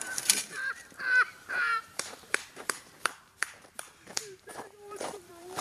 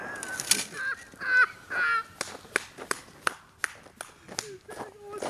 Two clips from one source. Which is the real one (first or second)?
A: second